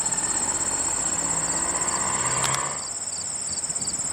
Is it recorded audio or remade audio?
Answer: recorded